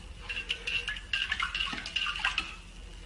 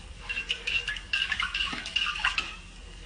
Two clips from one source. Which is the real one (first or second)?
first